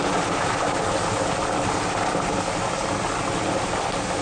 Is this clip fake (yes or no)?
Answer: no